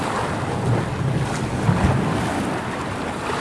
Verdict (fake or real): real